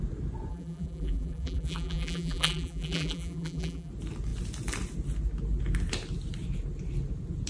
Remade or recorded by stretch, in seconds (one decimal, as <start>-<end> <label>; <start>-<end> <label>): 0.0-0.5 recorded; 0.5-3.9 remade; 3.9-7.5 recorded